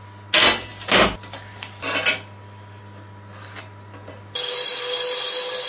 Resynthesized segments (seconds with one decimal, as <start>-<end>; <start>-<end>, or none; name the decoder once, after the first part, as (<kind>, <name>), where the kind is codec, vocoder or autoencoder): none